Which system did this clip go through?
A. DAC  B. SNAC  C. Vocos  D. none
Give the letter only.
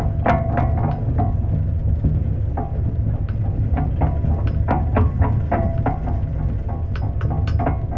D